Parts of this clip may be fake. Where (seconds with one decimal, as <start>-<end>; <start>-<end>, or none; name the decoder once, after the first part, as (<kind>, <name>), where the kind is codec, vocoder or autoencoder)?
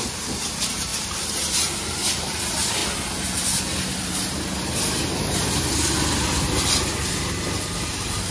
0.0-0.9 (vocoder, BigVGAN v2); 1.5-2.8; 7.8-8.3